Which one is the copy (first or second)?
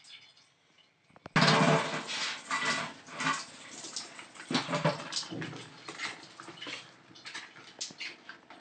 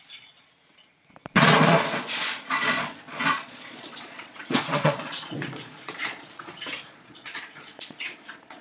second